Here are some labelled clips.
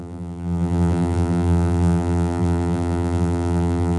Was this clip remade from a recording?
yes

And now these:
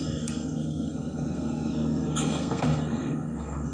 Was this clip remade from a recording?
yes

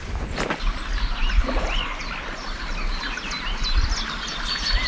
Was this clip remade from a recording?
no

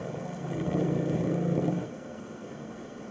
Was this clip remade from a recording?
yes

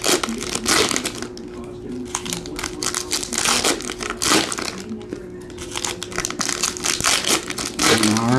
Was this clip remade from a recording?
no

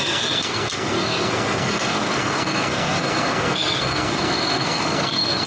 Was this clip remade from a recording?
yes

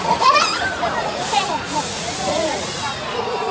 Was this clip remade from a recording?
yes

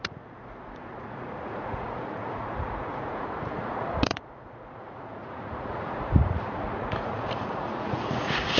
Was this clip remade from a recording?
yes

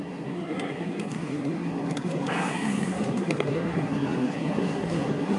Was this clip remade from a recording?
yes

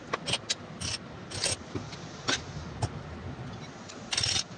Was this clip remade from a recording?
no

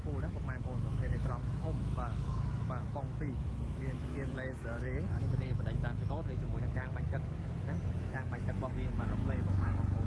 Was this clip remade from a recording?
yes